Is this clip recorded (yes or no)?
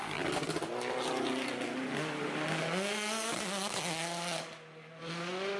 yes